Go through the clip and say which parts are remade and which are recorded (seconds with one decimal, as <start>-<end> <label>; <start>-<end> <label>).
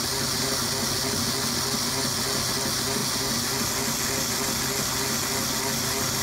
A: 0.0-6.2 recorded